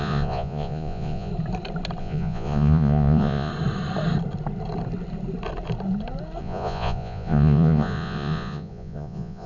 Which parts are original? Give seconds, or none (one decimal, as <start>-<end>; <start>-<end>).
1.3-2.0; 3.5-6.4